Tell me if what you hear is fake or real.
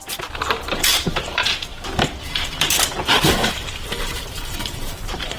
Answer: fake